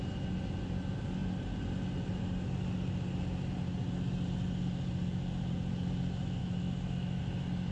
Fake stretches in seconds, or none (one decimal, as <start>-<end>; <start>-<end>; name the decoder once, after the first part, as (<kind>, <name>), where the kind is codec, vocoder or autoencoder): 6.4-7.2 (autoencoder, DAC-VAE)